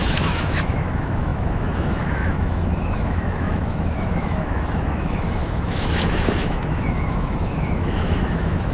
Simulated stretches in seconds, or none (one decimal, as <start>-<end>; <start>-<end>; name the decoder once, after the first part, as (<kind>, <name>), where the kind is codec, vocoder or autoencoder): 0.0-8.7 (autoencoder, DAC-VAE)